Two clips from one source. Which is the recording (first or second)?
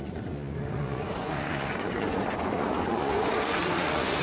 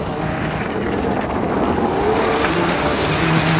second